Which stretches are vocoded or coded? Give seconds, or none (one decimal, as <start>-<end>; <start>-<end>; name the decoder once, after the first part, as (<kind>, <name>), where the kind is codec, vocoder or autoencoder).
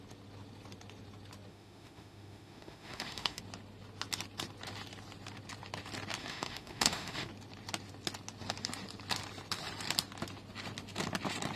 1.5-3.4 (autoencoder, DAC-VAE); 6.2-7.3